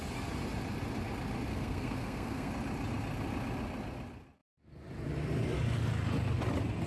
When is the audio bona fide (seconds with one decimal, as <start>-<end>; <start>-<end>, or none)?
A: 0.0-1.5; 2.5-6.9